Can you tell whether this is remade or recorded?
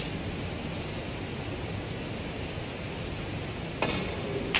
recorded